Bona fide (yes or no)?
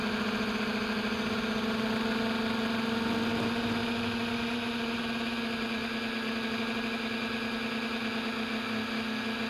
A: yes